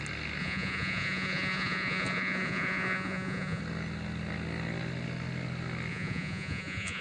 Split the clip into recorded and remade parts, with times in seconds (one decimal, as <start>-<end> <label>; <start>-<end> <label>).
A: 0.0-0.4 recorded; 0.4-3.6 remade; 3.6-5.9 recorded; 5.9-7.0 remade